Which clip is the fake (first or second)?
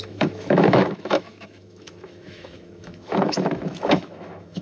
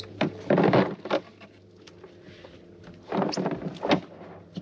first